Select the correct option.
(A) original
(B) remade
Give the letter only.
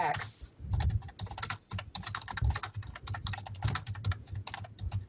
A